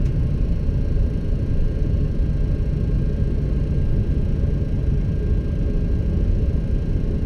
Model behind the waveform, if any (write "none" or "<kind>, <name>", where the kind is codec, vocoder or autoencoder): none